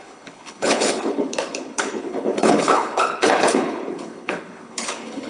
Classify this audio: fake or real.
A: fake